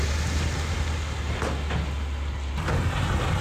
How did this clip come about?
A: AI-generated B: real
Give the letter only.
B